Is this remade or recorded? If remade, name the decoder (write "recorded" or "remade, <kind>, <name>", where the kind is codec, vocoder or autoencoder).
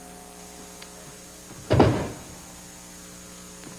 recorded